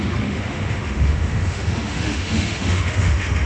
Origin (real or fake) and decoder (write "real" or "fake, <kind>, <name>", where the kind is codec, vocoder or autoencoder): fake, autoencoder, DAC-VAE